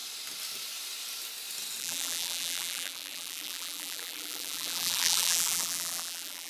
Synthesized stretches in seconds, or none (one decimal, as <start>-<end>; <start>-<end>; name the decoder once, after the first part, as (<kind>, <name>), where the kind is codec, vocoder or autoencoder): 1.8-6.5 (vocoder, BigVGAN v2)